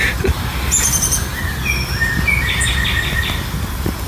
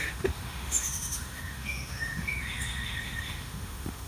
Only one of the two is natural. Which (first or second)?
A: first